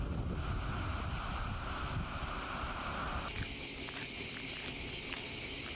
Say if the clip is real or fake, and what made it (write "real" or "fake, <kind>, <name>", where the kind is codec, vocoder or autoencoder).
real